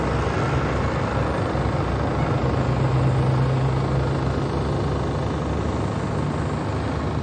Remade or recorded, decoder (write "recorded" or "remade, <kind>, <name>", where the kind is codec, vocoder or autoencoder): recorded